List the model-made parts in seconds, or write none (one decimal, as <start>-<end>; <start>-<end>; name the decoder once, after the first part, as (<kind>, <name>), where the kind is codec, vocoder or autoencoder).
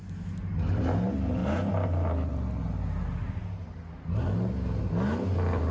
none